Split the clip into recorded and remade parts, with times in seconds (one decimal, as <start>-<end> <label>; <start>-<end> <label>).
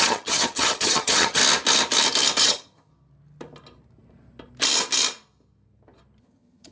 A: 0.0-1.4 remade; 1.4-2.4 recorded; 2.4-2.9 remade; 2.9-6.2 recorded; 6.2-6.7 remade